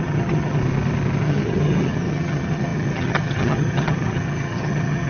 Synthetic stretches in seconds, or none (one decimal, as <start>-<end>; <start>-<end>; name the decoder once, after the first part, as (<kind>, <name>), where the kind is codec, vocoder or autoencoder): 0.0-0.6 (vocoder, HiFi-GAN); 1.2-5.1